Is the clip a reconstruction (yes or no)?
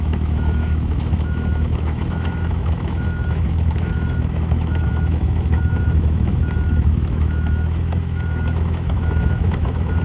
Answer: yes